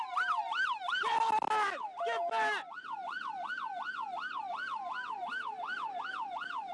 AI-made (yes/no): no